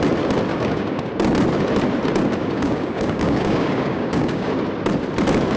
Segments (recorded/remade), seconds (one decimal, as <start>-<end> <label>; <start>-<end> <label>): 0.0-0.5 recorded; 0.5-1.1 remade; 1.1-2.4 recorded; 2.4-4.5 remade; 4.5-5.6 recorded